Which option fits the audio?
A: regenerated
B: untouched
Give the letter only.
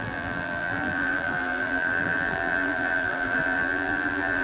A